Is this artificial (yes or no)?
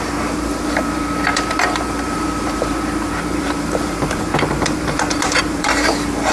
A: yes